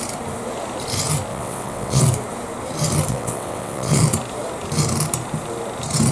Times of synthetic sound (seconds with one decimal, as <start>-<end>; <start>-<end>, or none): 1.3-2.0; 3.1-4.0